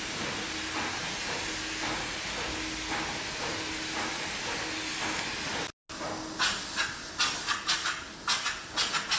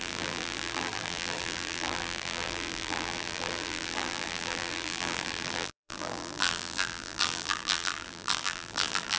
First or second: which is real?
first